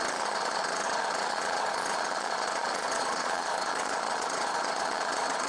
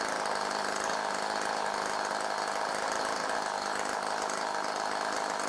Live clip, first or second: second